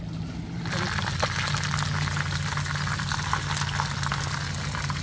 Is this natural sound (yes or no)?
yes